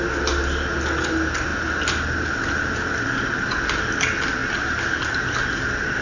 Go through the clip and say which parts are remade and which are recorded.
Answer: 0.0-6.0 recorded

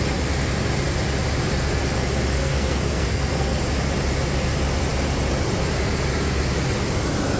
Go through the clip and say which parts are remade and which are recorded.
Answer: 0.0-2.4 recorded; 2.4-3.6 remade; 3.6-7.4 recorded